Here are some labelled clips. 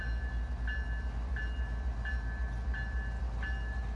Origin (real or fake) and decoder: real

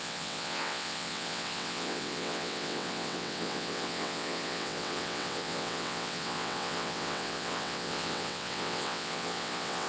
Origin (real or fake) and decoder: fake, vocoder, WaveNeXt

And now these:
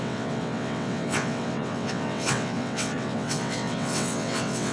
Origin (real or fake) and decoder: fake, vocoder, WaveNeXt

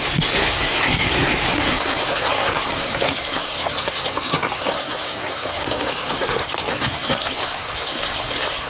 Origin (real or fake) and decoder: fake, codec, SNAC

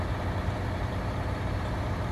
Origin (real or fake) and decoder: real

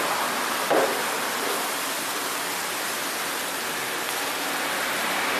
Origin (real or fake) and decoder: real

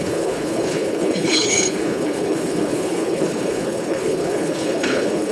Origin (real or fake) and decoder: fake, codec, HILCodec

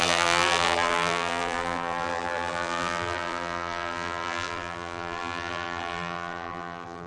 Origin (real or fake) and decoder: fake, vocoder, BigVGAN v2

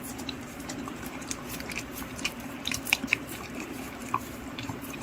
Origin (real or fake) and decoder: fake, vocoder, BigVGAN v2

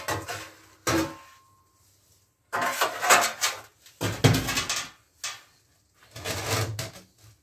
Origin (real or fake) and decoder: real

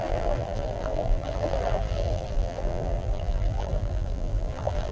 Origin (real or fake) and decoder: fake, vocoder, BigVGAN v2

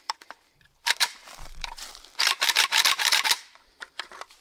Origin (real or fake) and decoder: fake, vocoder, BigVGAN v2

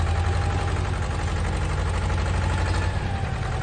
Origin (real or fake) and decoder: real